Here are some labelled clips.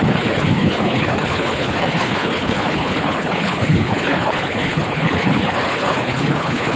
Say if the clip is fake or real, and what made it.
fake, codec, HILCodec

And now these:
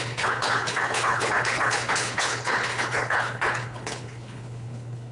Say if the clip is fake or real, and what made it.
fake, codec, HILCodec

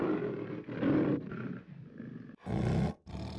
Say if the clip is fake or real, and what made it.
real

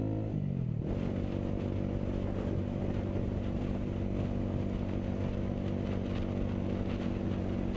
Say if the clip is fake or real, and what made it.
real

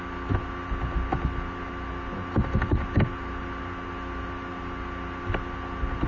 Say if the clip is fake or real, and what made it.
real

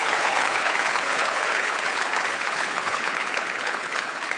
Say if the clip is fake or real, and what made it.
fake, codec, HILCodec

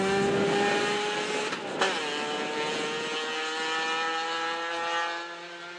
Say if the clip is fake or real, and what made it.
real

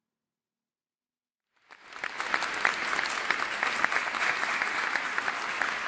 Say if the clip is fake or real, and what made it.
real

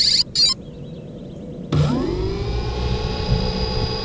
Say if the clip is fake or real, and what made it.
real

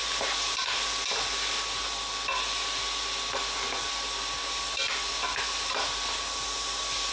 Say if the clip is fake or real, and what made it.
real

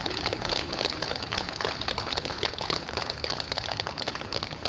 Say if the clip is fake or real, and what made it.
fake, codec, HILCodec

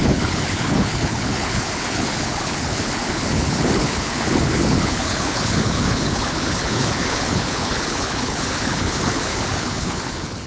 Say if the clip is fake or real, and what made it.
fake, codec, HILCodec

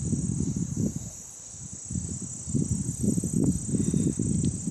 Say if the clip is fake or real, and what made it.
real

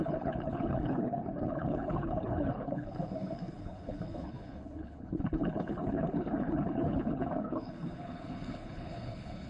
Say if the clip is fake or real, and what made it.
fake, codec, HILCodec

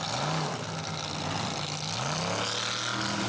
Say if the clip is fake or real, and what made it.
real